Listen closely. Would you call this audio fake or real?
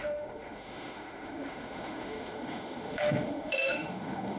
fake